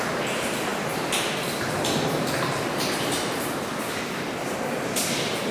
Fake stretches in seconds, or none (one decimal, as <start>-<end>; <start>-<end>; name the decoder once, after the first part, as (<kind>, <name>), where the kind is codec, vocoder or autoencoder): 0.0-0.7 (vocoder, BigVGAN v2); 3.7-5.5